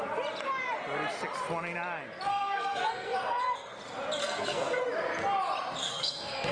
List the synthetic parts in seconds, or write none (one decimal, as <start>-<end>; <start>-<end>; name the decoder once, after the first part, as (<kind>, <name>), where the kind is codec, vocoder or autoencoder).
2.3-3.8 (codec, SNAC); 4.2-4.8; 5.8-6.5